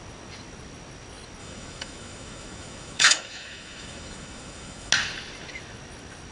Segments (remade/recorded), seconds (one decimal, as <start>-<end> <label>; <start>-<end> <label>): 0.0-1.4 recorded; 1.4-4.9 remade; 4.9-6.3 recorded